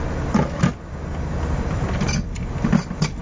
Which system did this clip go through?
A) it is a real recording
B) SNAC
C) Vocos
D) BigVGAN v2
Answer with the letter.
A